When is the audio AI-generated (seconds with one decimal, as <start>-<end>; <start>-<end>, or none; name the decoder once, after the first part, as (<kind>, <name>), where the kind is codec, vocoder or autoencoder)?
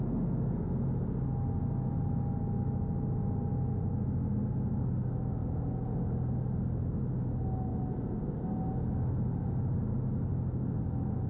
none